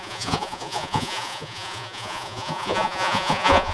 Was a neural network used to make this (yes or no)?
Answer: yes